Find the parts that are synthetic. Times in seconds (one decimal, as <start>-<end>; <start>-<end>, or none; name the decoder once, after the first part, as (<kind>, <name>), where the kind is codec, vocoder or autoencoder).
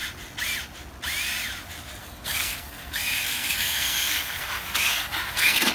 2.0-5.7 (codec, SNAC)